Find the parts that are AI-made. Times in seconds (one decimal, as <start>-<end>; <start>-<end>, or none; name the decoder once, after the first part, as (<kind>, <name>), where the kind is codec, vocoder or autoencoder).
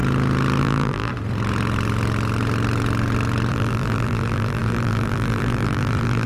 0.6-1.1 (vocoder, BigVGAN v2); 3.5-6.3